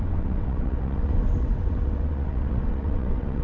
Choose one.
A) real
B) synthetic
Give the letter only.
B